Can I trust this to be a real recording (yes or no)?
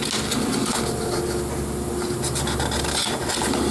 yes